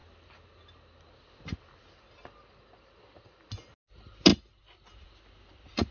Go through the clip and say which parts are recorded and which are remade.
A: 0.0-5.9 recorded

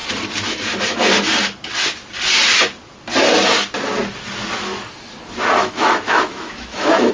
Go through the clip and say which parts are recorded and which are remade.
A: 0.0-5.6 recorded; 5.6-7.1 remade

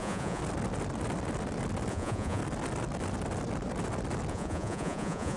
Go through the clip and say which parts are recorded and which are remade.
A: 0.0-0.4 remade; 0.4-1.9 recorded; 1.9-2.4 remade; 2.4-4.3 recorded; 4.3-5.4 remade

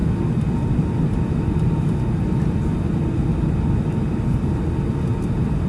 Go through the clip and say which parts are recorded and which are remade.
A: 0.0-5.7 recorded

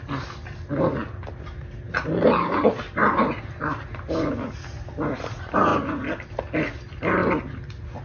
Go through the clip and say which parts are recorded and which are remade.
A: 0.0-8.0 recorded

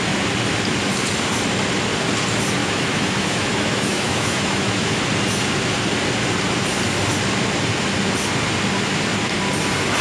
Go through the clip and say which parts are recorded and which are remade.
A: 0.0-2.6 recorded; 2.6-5.0 remade; 5.0-10.0 recorded

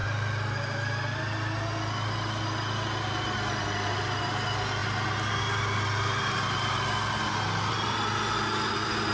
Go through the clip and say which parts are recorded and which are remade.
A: 0.0-9.1 recorded

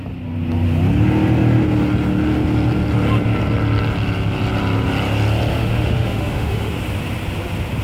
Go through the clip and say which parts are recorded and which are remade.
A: 0.0-5.5 recorded; 5.5-6.7 remade; 6.7-7.8 recorded